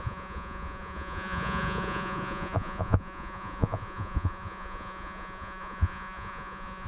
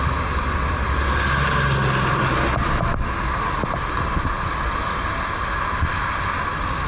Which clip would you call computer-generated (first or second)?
first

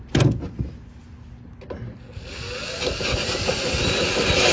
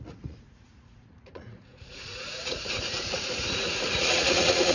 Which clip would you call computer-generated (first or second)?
second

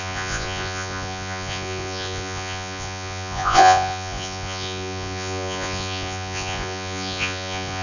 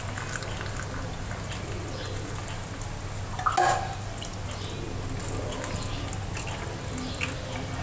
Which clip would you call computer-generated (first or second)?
first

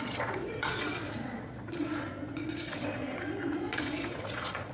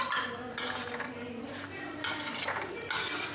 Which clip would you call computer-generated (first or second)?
first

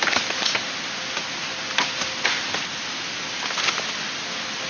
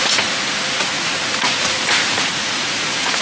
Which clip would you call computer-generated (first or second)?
second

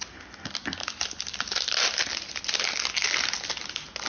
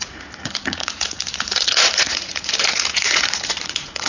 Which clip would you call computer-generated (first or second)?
second